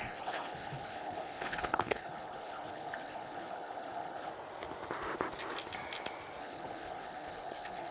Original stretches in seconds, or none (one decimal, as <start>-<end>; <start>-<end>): 4.3-6.4